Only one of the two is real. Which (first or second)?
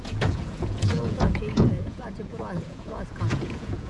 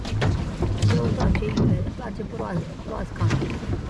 second